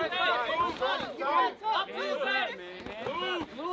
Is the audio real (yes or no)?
yes